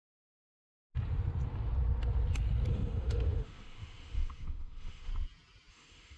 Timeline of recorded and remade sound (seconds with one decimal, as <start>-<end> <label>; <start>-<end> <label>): 0.0-0.4 remade; 0.4-2.7 recorded; 2.7-5.1 remade; 5.1-5.7 recorded; 5.7-6.2 remade